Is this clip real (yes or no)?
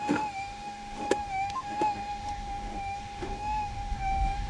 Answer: no